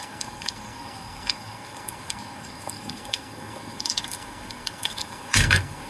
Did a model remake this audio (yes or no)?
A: yes